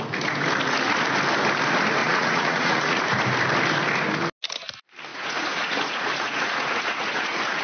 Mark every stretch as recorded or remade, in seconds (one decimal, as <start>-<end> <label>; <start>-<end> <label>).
0.0-2.0 recorded; 2.0-3.0 remade; 3.0-5.1 recorded; 5.1-7.6 remade